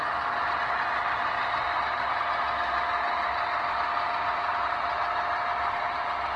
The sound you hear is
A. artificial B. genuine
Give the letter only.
B